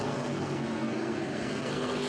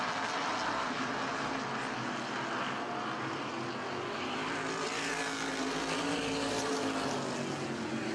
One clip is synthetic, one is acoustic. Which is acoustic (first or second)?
second